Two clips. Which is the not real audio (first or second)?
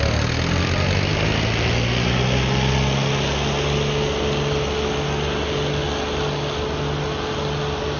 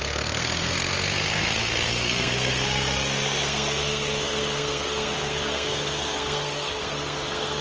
second